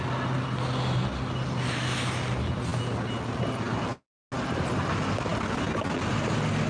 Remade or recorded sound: recorded